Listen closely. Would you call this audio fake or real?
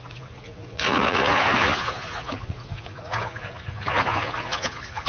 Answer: fake